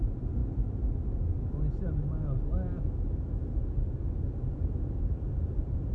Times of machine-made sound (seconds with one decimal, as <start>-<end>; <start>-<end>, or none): none